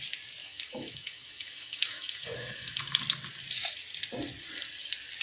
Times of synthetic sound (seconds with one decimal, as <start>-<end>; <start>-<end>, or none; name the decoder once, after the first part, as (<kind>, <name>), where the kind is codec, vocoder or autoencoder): 0.4-3.0 (autoencoder, DAC-VAE)